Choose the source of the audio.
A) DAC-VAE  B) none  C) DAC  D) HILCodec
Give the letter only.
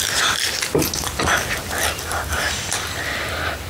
B